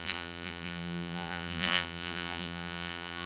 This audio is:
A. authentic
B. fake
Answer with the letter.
B